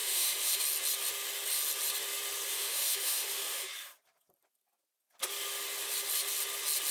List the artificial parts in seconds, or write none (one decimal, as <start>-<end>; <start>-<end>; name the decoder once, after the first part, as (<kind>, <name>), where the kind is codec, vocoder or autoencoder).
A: 0.0-0.6 (autoencoder, DAC-VAE); 2.5-3.7